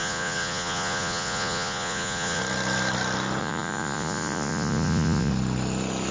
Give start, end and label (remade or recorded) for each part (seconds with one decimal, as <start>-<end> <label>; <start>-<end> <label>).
0.0-2.4 remade; 2.4-3.4 recorded; 3.4-5.3 remade; 5.3-6.1 recorded